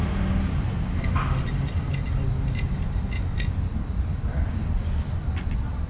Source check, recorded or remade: recorded